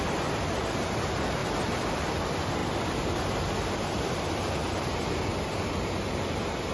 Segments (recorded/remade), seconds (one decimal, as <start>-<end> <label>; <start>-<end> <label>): 0.0-4.6 recorded; 4.6-5.3 remade; 5.3-6.7 recorded